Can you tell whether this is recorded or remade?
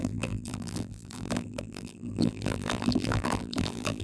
remade